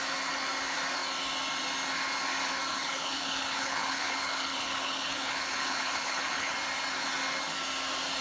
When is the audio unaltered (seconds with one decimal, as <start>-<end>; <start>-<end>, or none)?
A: 0.0-2.7; 6.5-8.2